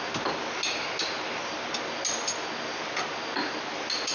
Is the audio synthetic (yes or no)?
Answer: no